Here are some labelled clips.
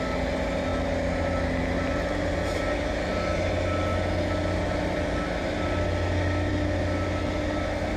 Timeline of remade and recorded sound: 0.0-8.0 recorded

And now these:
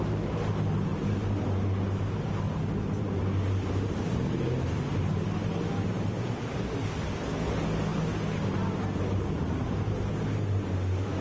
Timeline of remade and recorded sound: 0.0-11.2 recorded

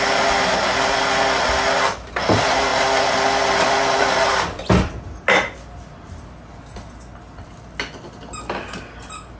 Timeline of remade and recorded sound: 0.0-9.4 recorded

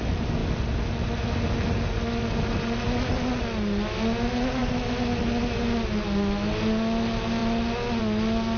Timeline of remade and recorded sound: 0.0-8.6 recorded

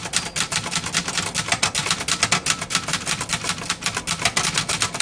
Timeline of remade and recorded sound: 0.0-5.0 recorded

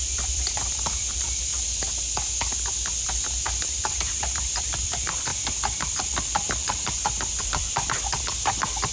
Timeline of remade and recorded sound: 0.0-1.5 remade; 1.5-3.8 recorded; 3.8-5.3 remade; 5.3-7.4 recorded; 7.4-8.9 remade

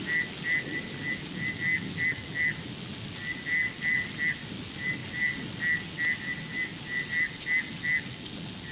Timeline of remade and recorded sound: 0.0-8.7 recorded